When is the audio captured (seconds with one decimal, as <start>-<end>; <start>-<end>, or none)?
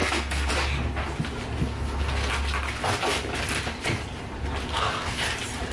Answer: 0.5-1.6; 2.3-4.7; 5.2-5.7